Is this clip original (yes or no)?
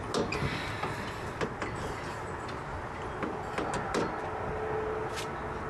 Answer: yes